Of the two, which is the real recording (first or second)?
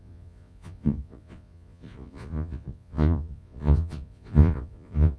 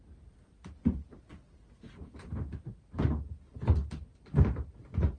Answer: second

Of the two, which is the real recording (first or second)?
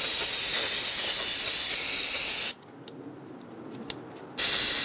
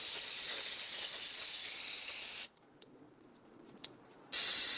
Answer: first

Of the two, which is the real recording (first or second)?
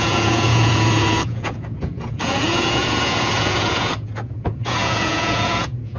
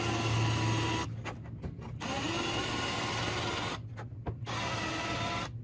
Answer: second